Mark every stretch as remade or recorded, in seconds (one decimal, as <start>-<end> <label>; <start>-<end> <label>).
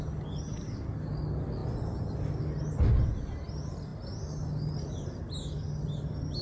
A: 0.0-6.4 recorded